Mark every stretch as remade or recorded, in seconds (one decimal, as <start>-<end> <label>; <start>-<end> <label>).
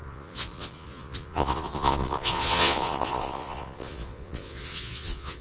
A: 0.0-5.4 remade